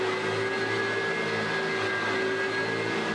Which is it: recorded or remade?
recorded